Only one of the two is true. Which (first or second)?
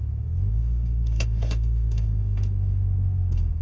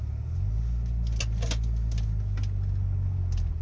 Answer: second